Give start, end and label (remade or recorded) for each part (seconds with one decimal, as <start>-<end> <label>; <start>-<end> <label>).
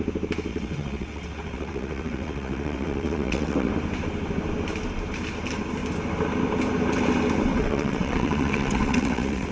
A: 0.0-0.5 recorded; 0.5-3.7 remade; 3.7-7.5 recorded; 7.5-9.5 remade